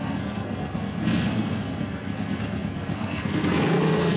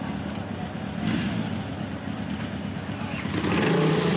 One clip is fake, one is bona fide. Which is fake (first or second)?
first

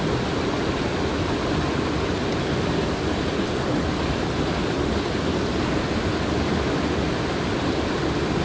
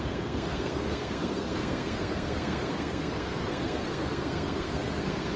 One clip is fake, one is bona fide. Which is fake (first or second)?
second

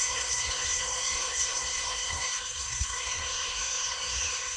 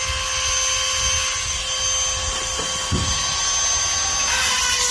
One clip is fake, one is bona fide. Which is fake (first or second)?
first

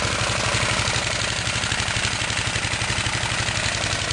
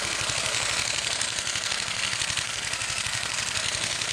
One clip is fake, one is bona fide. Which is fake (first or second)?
second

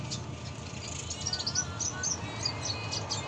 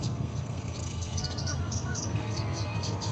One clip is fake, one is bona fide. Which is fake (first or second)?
second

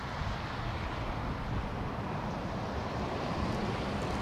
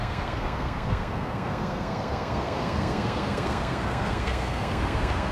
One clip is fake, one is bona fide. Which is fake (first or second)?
second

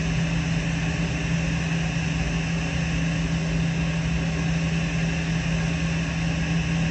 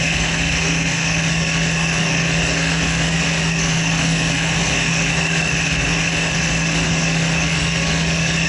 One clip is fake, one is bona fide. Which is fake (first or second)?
second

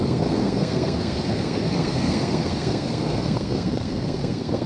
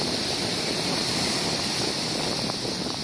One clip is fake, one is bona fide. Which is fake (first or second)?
first